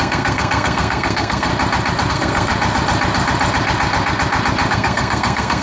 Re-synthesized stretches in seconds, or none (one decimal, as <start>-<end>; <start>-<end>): 0.0-1.5; 2.1-2.5; 4.7-5.6